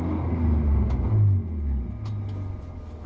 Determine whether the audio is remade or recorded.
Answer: recorded